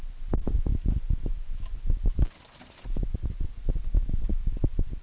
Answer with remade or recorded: recorded